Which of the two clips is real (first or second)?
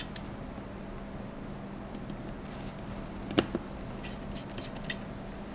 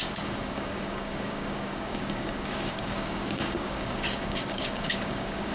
first